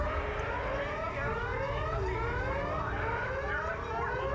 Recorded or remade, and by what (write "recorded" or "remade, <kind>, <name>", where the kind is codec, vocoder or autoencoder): recorded